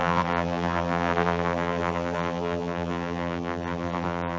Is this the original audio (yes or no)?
no